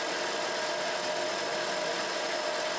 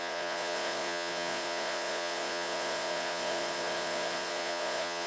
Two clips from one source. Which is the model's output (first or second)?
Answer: second